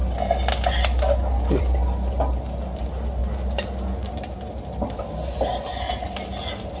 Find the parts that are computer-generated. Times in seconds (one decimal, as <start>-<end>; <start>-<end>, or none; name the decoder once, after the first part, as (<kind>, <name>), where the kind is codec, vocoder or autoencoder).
none